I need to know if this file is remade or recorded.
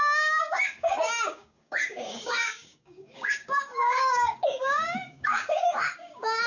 remade